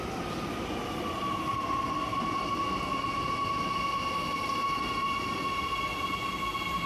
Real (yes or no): yes